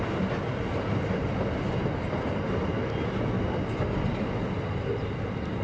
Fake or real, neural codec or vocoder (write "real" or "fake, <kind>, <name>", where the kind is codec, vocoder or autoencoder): real